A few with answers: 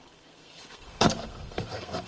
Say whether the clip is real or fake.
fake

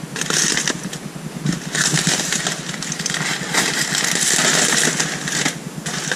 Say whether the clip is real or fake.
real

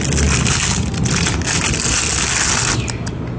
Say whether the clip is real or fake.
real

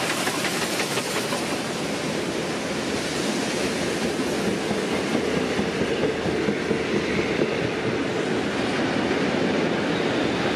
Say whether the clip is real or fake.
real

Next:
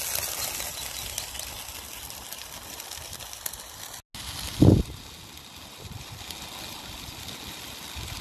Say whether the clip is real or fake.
real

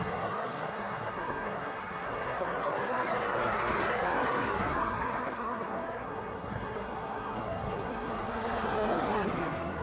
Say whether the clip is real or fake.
fake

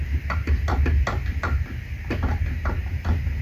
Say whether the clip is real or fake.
real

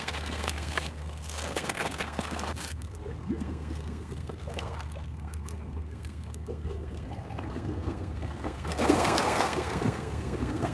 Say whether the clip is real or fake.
fake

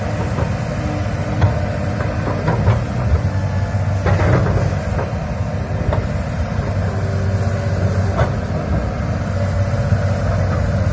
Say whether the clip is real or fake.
real